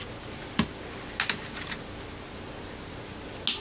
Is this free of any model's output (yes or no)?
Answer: yes